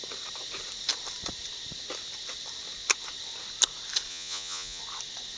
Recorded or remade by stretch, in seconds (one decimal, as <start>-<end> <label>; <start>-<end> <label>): 0.0-4.1 recorded; 4.1-4.8 remade; 4.8-5.4 recorded